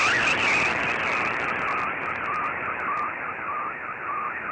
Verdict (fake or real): real